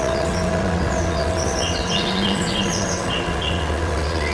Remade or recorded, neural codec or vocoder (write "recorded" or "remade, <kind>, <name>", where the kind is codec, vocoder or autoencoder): remade, vocoder, WaveNeXt